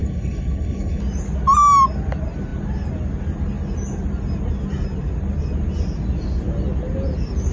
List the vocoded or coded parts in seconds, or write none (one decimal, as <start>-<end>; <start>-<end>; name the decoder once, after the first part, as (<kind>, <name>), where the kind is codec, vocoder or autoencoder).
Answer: 0.0-1.0 (codec, HILCodec)